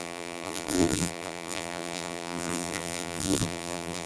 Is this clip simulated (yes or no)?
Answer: yes